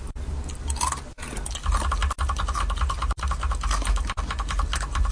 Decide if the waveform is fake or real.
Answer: real